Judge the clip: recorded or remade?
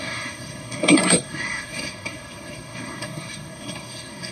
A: remade